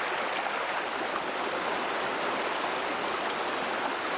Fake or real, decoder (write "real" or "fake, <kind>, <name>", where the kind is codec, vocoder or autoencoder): real